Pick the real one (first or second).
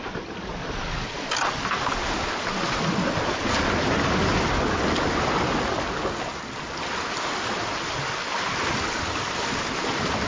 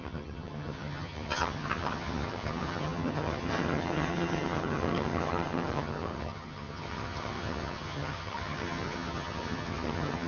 first